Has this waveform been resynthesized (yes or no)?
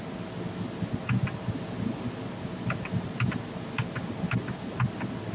no